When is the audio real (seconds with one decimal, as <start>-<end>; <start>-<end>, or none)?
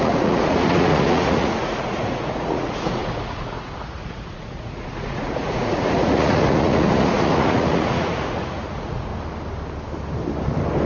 9.1-10.9